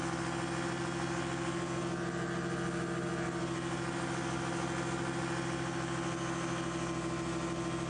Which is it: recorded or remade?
recorded